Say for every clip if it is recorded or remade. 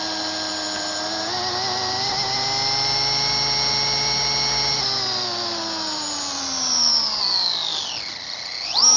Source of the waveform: recorded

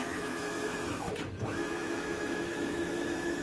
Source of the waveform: remade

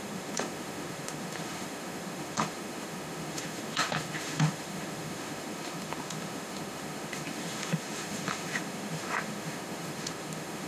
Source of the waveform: remade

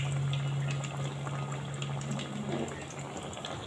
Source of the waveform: recorded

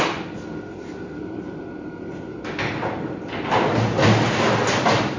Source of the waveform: recorded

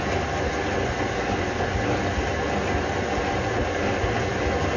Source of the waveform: recorded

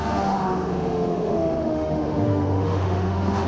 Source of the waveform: remade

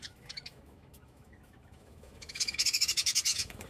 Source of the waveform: remade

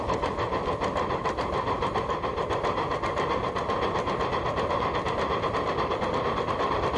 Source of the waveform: recorded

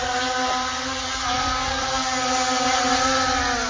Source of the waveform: recorded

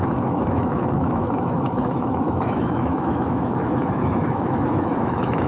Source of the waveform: remade